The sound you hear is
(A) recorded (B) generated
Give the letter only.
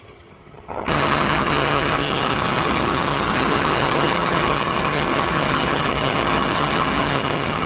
B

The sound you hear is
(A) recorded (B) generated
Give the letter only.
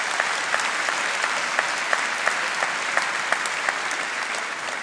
A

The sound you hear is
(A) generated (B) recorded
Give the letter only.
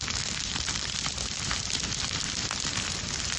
A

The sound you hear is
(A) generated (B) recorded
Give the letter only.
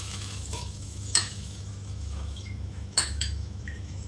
A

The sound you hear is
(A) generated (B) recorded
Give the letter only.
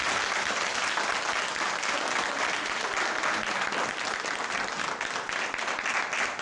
B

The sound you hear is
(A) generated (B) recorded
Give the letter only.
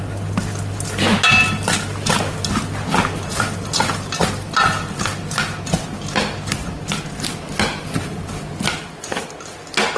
B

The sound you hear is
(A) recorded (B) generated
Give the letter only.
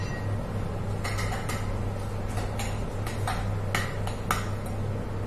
A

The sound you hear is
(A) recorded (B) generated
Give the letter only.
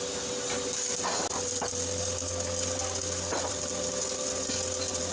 A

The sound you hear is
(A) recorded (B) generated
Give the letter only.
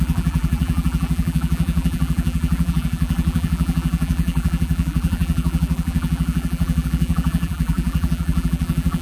B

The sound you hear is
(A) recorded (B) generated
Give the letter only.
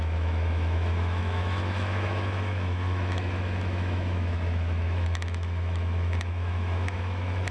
B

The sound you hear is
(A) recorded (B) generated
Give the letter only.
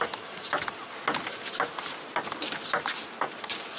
A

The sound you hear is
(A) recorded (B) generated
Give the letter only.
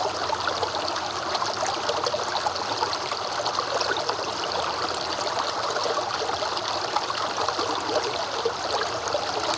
A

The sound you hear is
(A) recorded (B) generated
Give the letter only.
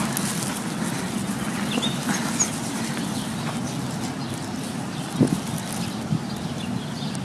A